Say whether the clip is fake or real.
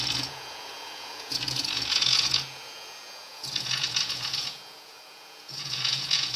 fake